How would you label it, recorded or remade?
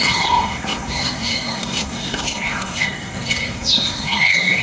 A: remade